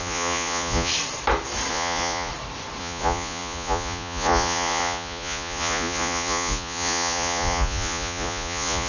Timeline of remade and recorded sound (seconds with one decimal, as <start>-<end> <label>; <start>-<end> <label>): 0.0-0.9 remade; 0.9-1.7 recorded; 1.7-2.3 remade; 2.3-2.8 recorded; 2.8-8.9 remade